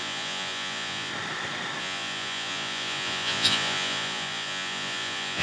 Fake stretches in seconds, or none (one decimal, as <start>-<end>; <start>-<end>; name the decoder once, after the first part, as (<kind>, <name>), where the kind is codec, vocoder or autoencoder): 0.0-1.1 (vocoder, Vocos); 1.8-5.4